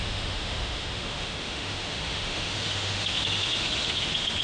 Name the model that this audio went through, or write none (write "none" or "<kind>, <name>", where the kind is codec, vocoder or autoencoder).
autoencoder, DAC-VAE